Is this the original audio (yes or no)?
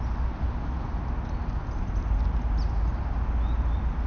yes